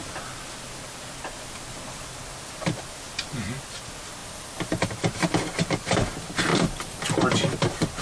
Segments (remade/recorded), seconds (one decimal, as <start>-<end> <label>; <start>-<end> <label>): 0.0-4.2 recorded; 4.2-4.9 remade; 4.9-6.5 recorded; 6.5-7.0 remade; 7.0-8.0 recorded

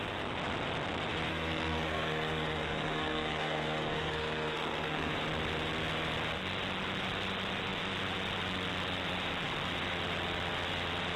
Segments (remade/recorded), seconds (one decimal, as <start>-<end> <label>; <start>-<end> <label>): 0.0-1.3 recorded; 1.3-5.1 remade; 5.1-11.2 recorded

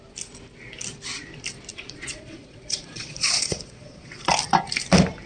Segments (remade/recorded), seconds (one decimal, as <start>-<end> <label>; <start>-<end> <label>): 0.0-1.7 recorded; 1.7-4.3 remade; 4.3-5.3 recorded

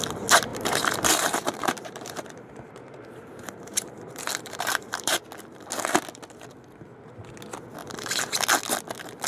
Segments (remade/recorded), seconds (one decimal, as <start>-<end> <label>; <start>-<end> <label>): 0.0-0.5 recorded; 0.5-5.2 remade; 5.2-7.8 recorded; 7.8-8.4 remade; 8.4-9.3 recorded

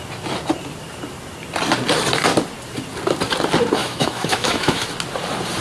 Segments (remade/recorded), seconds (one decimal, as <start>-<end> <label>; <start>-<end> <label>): 0.0-3.8 recorded; 3.8-4.8 remade; 4.8-5.6 recorded

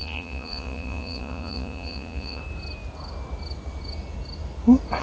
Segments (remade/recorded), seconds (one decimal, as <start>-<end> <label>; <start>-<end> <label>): 0.0-2.4 remade; 2.4-5.0 recorded

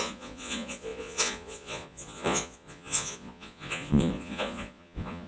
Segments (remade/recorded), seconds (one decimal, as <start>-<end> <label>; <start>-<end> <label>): 0.0-5.3 remade

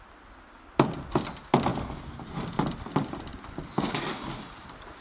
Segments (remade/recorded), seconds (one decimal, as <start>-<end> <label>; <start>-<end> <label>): 0.0-5.0 recorded